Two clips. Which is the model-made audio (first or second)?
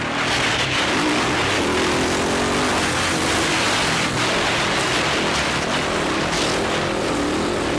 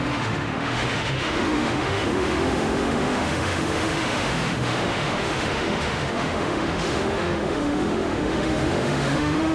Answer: second